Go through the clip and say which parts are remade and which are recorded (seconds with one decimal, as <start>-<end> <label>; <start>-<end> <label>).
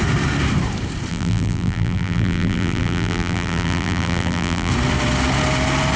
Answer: 0.0-1.1 recorded; 1.1-4.7 remade; 4.7-6.0 recorded